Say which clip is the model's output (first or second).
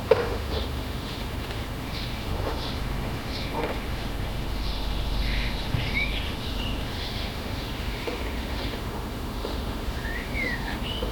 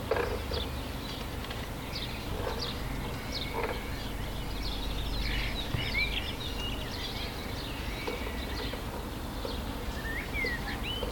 first